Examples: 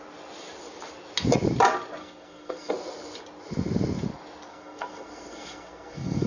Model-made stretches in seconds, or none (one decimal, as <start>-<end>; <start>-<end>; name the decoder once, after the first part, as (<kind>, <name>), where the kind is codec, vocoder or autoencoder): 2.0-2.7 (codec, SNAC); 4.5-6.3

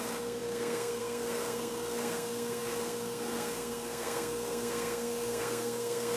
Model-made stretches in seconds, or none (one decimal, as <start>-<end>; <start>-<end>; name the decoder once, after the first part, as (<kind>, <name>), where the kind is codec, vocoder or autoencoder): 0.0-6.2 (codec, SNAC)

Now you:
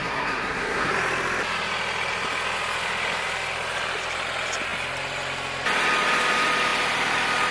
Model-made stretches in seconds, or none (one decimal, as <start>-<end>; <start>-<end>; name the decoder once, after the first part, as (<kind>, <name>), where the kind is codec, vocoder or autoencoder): 0.0-0.9 (codec, SNAC)

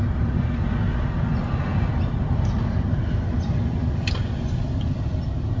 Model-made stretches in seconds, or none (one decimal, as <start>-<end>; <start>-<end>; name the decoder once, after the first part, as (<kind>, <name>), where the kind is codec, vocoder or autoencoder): none

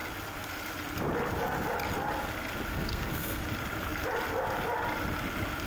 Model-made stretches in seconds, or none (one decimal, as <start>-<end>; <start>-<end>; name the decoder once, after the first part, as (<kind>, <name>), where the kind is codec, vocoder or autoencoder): 2.7-3.4 (codec, SNAC)